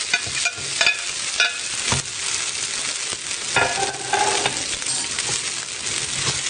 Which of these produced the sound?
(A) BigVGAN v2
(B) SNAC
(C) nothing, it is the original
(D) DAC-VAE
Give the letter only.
C